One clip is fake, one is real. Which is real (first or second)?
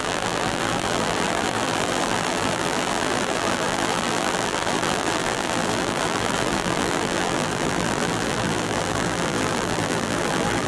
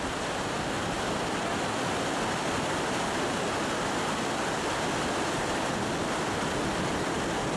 second